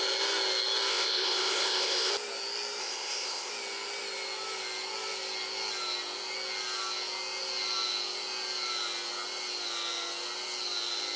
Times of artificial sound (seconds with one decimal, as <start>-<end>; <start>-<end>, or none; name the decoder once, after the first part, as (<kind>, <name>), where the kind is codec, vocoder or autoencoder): 0.9-2.1 (codec, ZipCodec); 2.8-3.5